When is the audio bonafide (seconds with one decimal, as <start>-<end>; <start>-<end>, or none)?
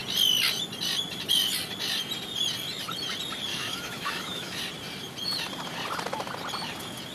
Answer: 0.0-3.5; 4.6-7.1